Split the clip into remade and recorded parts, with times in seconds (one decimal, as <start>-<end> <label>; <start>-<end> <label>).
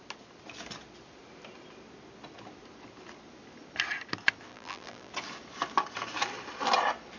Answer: 0.0-4.5 recorded; 4.5-5.1 remade; 5.1-7.2 recorded